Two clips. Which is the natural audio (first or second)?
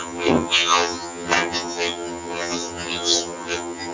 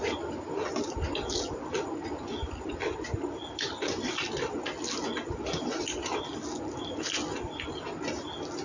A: second